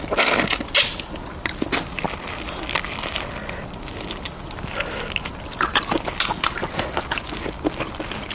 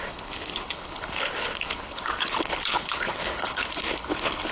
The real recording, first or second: first